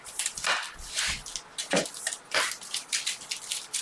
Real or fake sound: real